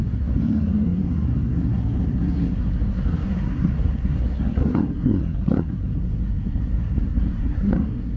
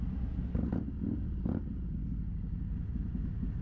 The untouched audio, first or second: second